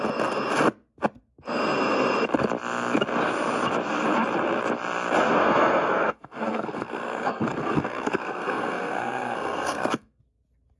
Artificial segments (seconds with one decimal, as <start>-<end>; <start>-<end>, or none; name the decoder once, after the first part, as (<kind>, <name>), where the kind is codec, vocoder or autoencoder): 5.4-10.2 (codec, SNAC)